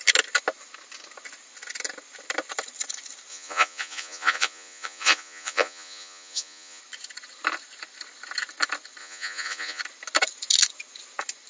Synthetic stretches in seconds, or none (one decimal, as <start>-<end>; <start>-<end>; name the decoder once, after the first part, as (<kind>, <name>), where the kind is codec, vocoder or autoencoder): 3.3-6.8 (vocoder, Vocos); 9.0-9.8